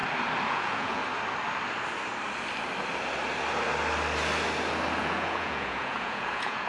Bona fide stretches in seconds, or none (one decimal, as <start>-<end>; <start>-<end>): 0.0-0.5; 1.0-5.0